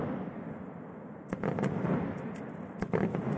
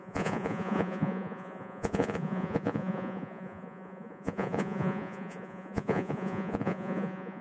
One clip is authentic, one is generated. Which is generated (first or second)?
second